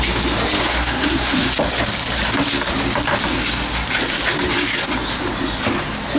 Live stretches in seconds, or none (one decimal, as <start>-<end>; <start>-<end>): 0.0-0.6; 1.5-6.2